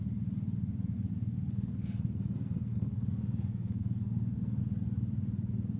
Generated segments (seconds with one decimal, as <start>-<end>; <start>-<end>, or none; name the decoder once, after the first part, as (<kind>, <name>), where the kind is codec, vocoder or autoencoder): 1.1-4.6 (codec, SNAC)